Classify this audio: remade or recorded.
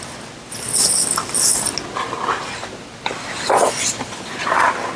recorded